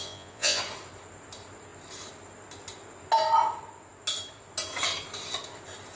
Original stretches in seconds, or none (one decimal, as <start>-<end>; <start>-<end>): 0.6-6.0

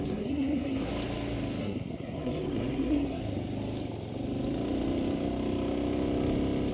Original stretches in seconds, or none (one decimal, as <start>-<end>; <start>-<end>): 0.9-1.6; 3.2-6.7

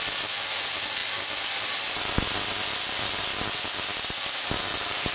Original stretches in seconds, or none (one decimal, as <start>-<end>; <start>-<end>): 0.0-5.1

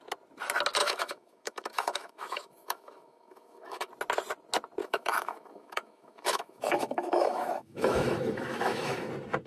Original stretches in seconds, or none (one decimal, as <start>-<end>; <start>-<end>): 0.0-0.8; 3.9-4.8; 9.1-9.5

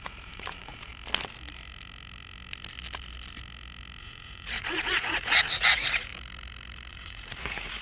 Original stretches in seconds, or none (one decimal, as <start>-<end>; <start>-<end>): 0.9-4.0; 6.1-6.9

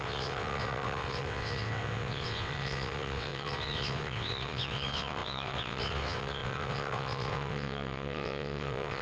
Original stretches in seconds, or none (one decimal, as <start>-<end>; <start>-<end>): none